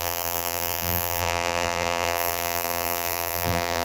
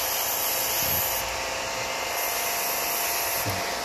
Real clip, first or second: second